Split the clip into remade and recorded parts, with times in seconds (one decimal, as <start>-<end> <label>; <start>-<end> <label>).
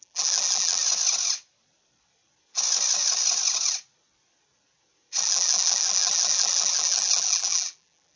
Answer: 0.0-0.8 remade; 0.8-5.2 recorded; 5.2-8.2 remade